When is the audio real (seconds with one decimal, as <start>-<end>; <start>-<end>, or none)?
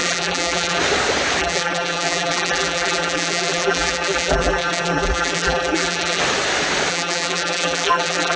0.8-1.4; 6.2-6.9